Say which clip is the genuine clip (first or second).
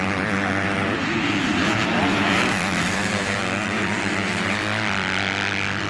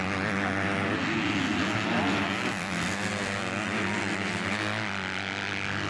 second